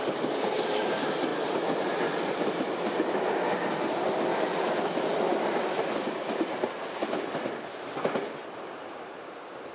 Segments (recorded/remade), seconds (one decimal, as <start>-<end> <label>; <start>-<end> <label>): 0.0-9.7 recorded